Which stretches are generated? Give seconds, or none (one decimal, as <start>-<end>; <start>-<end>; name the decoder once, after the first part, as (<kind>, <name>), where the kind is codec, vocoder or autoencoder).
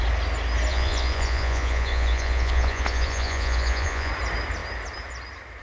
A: 0.7-4.1 (vocoder, Vocos)